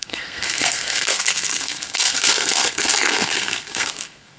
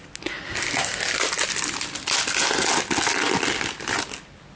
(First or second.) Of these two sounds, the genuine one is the second